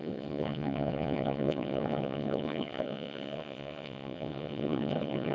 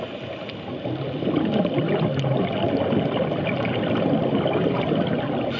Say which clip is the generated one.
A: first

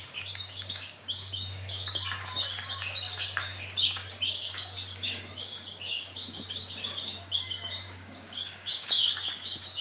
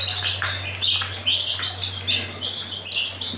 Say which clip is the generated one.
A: first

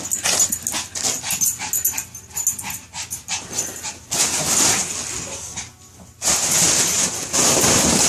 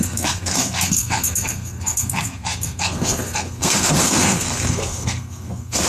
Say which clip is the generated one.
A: second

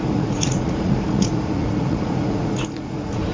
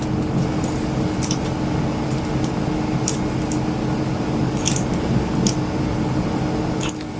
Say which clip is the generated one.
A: first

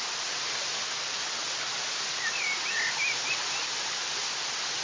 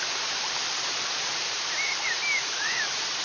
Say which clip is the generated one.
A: second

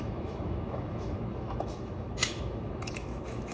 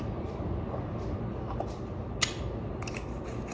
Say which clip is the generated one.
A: first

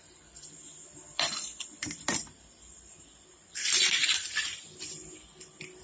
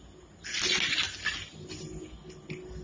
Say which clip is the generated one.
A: first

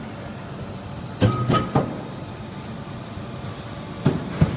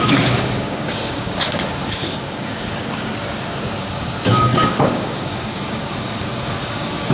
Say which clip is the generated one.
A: second